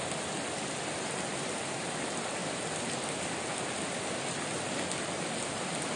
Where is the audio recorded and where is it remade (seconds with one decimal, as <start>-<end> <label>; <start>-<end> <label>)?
0.0-6.0 recorded